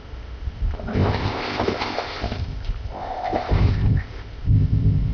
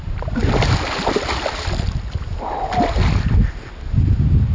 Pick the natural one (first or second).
second